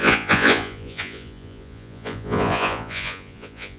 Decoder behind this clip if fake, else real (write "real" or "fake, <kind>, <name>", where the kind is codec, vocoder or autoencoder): fake, vocoder, Vocos